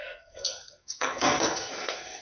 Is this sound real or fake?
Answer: fake